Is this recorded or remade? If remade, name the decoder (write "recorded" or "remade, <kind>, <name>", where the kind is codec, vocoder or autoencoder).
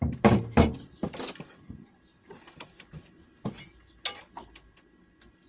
recorded